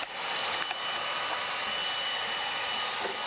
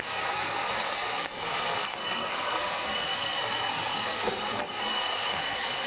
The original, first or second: first